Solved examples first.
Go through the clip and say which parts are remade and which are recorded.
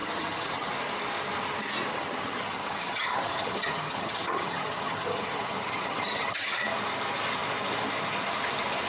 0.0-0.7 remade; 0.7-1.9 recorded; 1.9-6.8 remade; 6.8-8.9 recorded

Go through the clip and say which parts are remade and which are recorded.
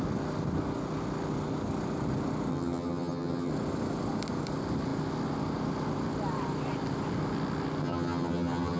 0.0-2.5 recorded; 2.5-3.5 remade; 3.5-7.8 recorded; 7.8-8.8 remade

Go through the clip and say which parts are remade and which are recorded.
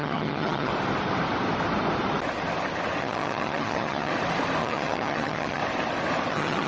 0.0-0.7 remade; 0.7-3.0 recorded; 3.0-4.1 remade; 4.1-4.6 recorded; 4.6-5.6 remade; 5.6-6.3 recorded; 6.3-6.7 remade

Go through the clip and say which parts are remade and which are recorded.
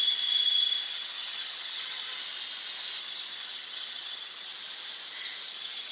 0.0-2.1 remade; 2.1-3.0 recorded; 3.0-4.5 remade; 4.5-5.5 recorded; 5.5-5.9 remade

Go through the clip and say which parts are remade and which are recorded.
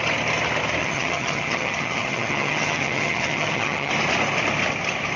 0.0-0.8 recorded; 0.8-3.9 remade; 3.9-5.2 recorded